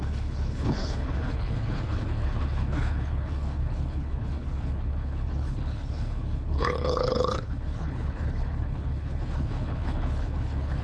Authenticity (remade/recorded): remade